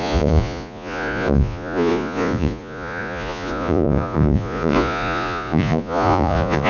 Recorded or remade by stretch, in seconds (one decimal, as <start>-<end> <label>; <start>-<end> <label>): 0.0-6.7 remade